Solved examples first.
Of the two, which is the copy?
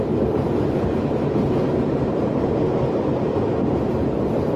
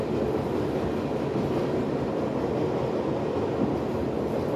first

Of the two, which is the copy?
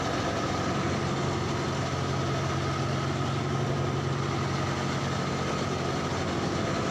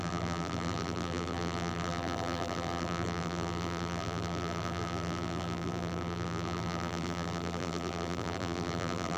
second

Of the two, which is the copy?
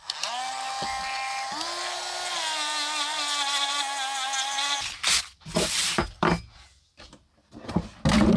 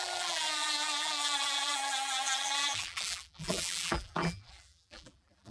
second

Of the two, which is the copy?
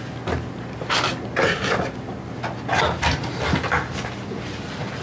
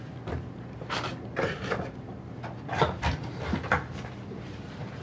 second